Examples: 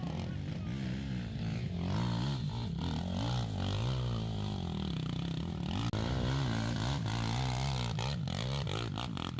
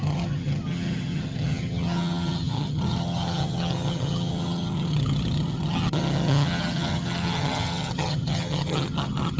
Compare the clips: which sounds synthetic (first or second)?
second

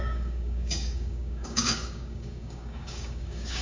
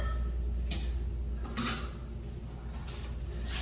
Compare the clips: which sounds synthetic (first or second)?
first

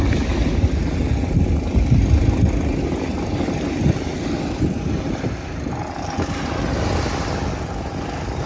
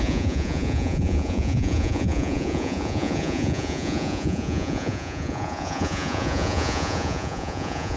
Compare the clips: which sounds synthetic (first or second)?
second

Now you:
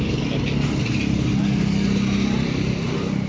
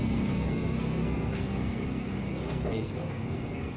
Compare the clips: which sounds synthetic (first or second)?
second